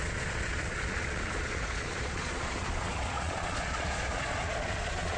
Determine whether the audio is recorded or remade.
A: remade